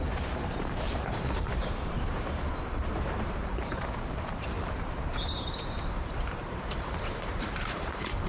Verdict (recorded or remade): remade